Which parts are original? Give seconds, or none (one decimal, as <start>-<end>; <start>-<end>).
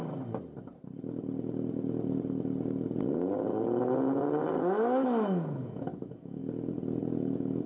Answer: 0.0-4.6; 6.4-7.2